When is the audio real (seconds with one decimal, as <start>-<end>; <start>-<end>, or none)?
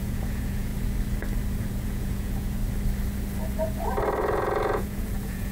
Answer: 0.7-1.6; 2.6-4.2